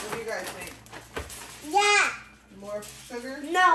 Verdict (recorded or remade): recorded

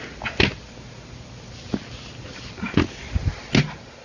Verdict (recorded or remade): recorded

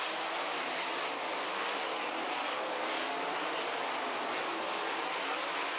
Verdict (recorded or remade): recorded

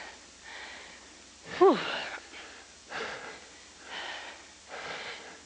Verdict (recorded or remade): recorded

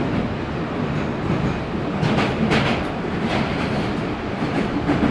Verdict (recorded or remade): recorded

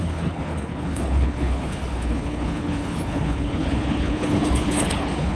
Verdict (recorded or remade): remade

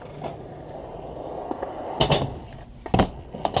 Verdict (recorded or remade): recorded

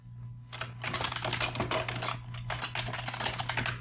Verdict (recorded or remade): recorded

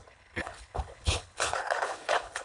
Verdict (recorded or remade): remade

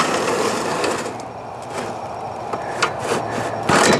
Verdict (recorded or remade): recorded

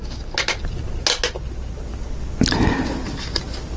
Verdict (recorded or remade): recorded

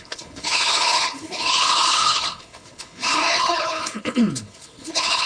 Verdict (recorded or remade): remade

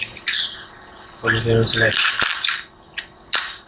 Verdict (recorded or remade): recorded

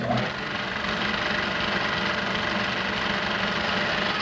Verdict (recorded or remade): recorded